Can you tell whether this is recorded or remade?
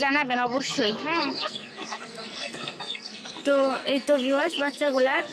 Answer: remade